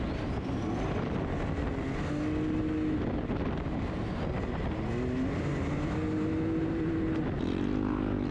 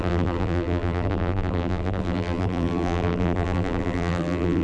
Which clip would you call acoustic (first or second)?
first